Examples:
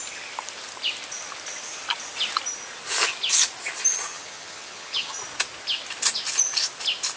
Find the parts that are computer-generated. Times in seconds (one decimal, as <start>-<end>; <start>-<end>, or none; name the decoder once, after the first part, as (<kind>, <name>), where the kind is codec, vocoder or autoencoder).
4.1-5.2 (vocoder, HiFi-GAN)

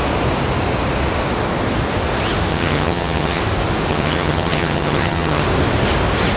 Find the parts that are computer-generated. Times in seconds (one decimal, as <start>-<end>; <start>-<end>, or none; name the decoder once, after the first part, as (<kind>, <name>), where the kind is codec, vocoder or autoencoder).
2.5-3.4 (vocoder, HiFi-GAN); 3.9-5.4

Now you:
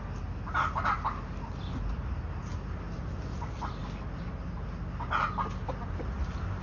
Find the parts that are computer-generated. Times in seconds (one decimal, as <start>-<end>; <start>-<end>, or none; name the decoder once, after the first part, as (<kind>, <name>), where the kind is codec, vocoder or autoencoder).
none

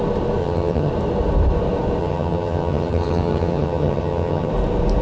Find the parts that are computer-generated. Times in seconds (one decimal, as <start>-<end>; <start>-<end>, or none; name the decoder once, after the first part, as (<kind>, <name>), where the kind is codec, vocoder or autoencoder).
0.4-0.9 (vocoder, HiFi-GAN); 2.0-4.5